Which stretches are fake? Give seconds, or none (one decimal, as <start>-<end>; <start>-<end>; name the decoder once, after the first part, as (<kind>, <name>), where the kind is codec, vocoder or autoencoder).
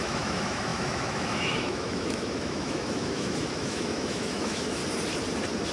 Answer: 0.0-4.8 (autoencoder, DAC-VAE)